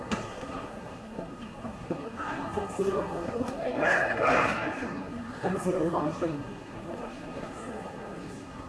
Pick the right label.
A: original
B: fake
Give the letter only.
B